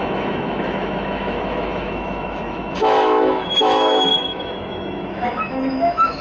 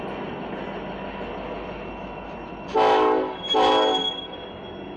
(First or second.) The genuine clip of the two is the second